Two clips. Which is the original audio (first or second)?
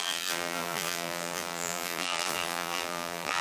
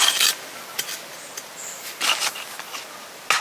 second